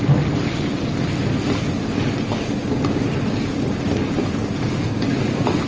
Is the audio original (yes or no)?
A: yes